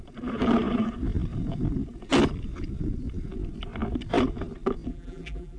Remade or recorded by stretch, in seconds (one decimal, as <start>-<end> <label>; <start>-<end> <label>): 0.0-4.9 recorded; 4.9-5.6 remade